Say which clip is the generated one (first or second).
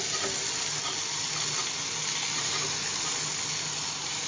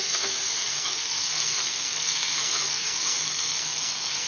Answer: second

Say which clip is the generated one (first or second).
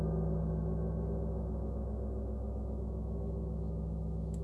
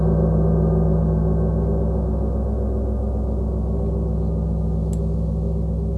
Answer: first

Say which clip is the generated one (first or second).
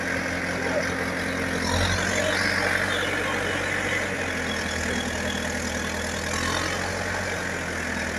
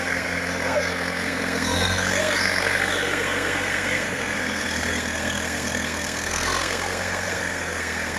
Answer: second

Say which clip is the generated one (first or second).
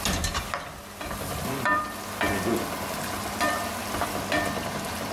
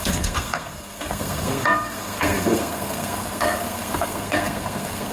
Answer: second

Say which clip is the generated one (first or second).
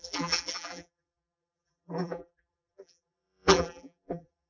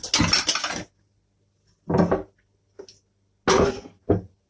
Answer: first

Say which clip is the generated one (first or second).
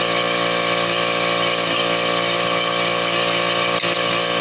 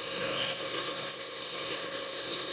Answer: second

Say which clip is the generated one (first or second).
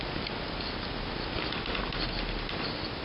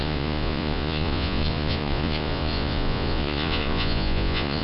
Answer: second